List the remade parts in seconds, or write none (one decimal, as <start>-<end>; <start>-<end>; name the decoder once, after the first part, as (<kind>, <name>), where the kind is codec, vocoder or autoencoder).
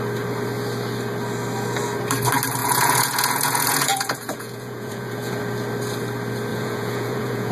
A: 2.6-5.4 (vocoder, Vocos); 6.5-7.5